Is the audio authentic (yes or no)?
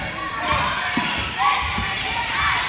no